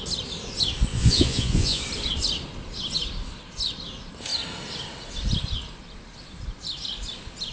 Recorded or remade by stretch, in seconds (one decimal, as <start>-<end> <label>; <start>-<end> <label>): 0.0-0.9 recorded; 0.9-1.8 remade; 1.8-7.5 recorded